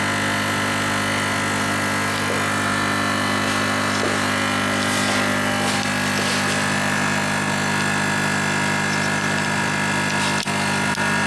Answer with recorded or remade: recorded